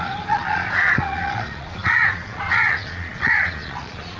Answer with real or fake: fake